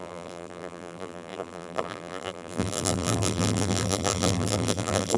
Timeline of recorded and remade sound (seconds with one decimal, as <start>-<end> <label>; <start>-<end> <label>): 0.0-5.2 remade